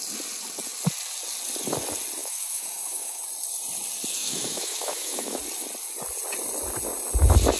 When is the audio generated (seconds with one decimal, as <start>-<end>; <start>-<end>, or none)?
2.2-3.2; 4.1-5.4